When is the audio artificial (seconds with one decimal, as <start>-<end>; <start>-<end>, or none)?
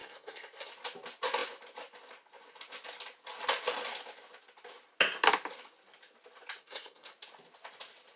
0.0-0.7; 6.6-7.1